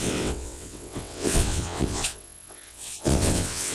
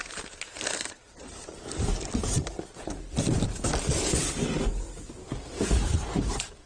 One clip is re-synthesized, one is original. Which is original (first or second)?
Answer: second